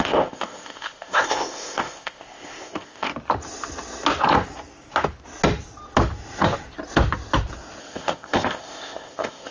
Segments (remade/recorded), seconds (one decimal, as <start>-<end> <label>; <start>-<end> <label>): 0.0-3.1 remade; 3.1-7.8 recorded; 7.8-9.5 remade

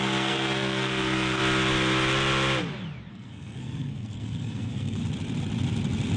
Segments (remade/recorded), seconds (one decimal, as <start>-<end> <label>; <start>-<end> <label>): 0.0-1.4 remade; 1.4-3.1 recorded; 3.1-5.0 remade; 5.0-6.2 recorded

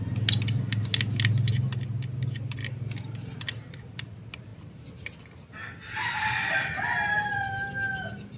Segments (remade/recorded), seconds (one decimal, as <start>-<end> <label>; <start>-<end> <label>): 0.0-8.4 recorded